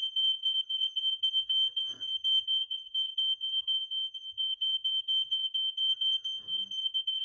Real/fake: fake